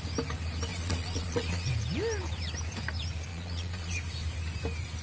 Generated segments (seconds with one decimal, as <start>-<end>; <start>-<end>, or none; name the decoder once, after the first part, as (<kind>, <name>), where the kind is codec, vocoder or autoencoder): 0.7-1.7 (vocoder, Vocos); 3.3-4.0